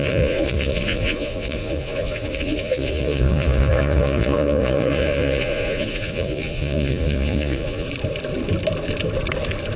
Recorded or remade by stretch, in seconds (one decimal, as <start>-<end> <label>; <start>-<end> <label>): 0.0-7.9 remade; 7.9-9.8 recorded